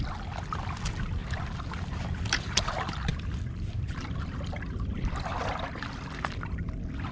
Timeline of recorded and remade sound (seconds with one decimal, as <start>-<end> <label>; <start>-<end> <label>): 0.0-1.2 recorded; 1.2-2.1 remade; 2.1-3.1 recorded; 3.1-7.1 remade